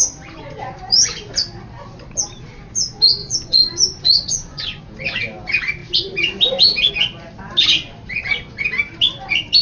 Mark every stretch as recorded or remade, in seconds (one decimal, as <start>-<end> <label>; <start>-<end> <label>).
0.0-3.2 recorded; 3.2-4.8 remade; 4.8-9.6 recorded